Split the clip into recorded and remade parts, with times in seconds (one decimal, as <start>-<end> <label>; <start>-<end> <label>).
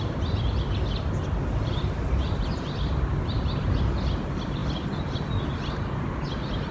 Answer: 0.0-6.7 recorded